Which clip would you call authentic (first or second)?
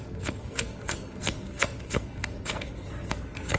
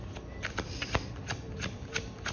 second